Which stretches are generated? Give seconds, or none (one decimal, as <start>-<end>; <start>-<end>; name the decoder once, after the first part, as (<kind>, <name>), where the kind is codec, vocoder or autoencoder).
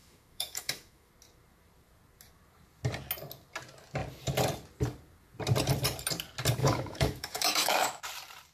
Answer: 0.0-1.1 (autoencoder, DAC-VAE); 6.6-8.0